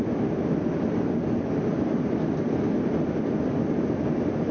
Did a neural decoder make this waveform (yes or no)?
no